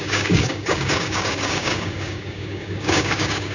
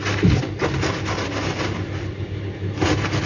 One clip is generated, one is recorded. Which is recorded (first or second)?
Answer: second